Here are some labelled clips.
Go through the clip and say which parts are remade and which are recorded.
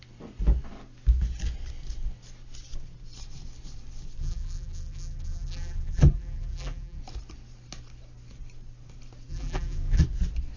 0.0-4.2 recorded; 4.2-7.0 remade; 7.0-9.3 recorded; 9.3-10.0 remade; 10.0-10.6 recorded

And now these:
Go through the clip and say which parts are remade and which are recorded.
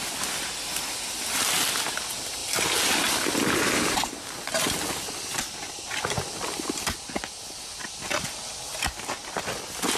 0.0-10.0 recorded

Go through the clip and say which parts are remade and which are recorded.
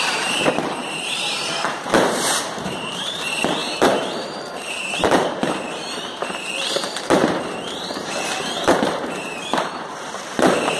0.0-10.8 remade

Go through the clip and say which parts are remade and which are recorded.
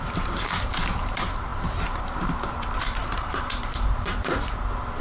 0.0-5.0 remade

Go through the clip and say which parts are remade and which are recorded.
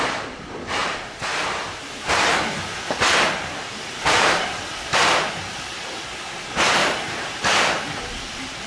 0.0-0.8 recorded; 0.8-4.6 remade; 4.6-6.8 recorded; 6.8-8.7 remade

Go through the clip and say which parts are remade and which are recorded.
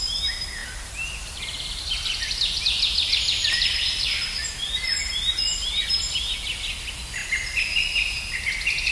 0.0-0.6 recorded; 0.6-5.4 remade; 5.4-7.2 recorded; 7.2-8.1 remade; 8.1-8.9 recorded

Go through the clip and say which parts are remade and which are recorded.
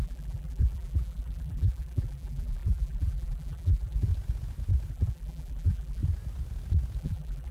0.0-4.1 remade; 4.1-4.9 recorded; 4.9-6.0 remade; 6.0-7.0 recorded; 7.0-7.5 remade